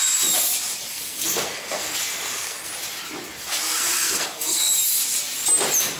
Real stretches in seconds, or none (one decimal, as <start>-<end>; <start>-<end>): 0.0-0.9; 2.7-3.3; 4.7-6.0